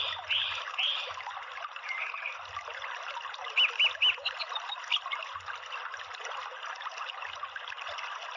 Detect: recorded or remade recorded